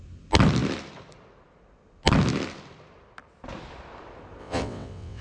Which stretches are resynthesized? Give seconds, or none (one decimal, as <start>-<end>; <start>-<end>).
4.4-5.2